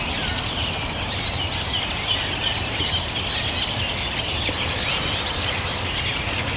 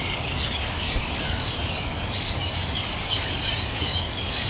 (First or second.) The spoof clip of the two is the second